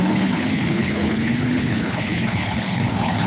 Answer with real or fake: fake